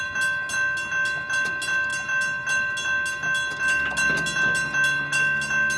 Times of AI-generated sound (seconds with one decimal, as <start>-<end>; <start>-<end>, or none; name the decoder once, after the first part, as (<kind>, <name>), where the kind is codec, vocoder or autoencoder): none

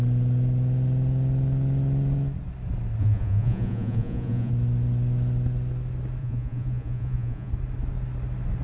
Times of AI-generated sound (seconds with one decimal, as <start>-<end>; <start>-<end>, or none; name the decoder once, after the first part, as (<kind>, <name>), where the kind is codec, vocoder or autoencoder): 3.0-4.5 (vocoder, Vocos); 6.2-7.5